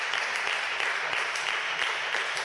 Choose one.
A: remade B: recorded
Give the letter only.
B